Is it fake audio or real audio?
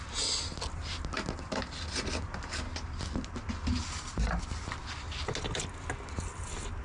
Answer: real